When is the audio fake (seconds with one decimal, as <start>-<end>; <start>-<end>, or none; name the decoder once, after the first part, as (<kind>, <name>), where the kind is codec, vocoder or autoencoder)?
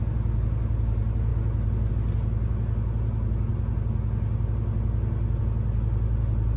none